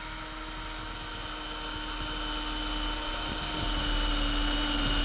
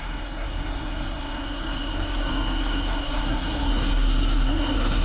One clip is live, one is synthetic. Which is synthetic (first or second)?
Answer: second